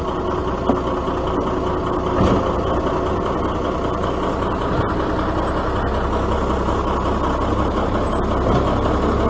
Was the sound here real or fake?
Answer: real